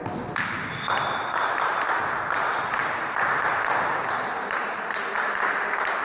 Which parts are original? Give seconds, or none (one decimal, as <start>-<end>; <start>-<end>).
0.0-6.0